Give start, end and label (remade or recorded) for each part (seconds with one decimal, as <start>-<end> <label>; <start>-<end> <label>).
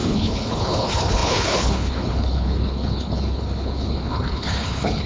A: 0.0-5.1 remade